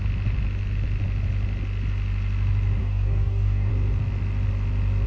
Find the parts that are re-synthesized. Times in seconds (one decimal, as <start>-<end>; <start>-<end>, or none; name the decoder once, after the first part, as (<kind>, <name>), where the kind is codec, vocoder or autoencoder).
2.8-3.7 (codec, DAC)